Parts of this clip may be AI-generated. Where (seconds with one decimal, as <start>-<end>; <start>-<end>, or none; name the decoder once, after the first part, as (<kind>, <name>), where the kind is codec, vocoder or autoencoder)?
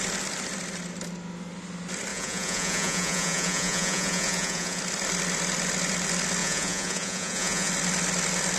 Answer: 2.1-4.8 (vocoder, Vocos); 6.4-7.7